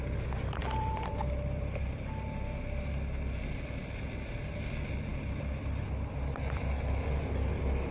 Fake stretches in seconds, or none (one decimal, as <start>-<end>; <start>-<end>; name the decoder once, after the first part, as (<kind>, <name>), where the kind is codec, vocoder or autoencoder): 0.6-2.3 (vocoder, BigVGAN v2); 3.8-4.6